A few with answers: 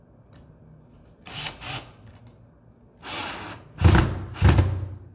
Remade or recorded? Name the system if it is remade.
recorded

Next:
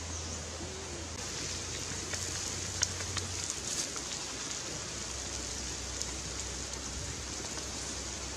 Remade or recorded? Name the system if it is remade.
recorded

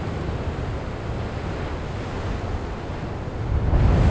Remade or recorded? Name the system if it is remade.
recorded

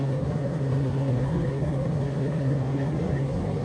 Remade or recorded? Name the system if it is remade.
remade, codec, SNAC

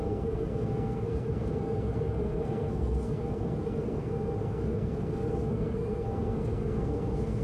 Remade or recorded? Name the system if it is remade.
remade, codec, SNAC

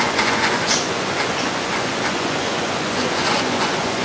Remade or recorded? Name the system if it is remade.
remade, vocoder, Vocos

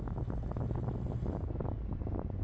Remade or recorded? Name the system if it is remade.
recorded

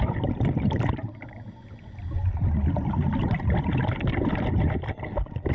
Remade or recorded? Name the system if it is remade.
recorded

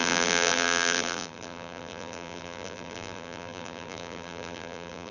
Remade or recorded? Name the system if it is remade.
remade, vocoder, BigVGAN v2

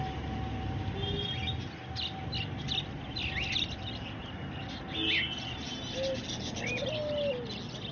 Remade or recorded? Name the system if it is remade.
recorded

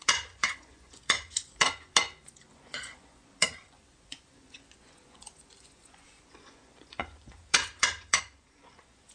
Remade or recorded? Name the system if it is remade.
remade, vocoder, Vocos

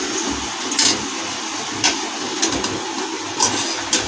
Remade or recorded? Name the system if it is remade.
recorded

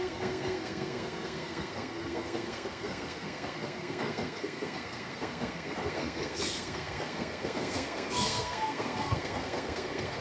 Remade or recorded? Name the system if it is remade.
remade, codec, SNAC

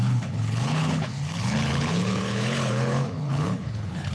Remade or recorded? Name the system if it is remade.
remade, codec, HILCodec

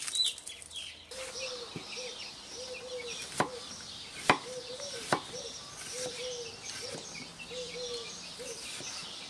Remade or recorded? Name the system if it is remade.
recorded